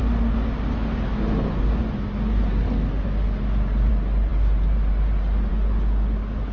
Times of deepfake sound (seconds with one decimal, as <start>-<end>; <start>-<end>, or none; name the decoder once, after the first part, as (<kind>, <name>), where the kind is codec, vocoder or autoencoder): none